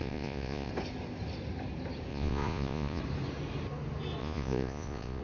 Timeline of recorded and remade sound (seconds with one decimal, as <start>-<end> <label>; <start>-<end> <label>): 0.0-0.7 remade; 0.7-2.1 recorded; 2.1-3.0 remade; 3.0-4.2 recorded; 4.2-5.2 remade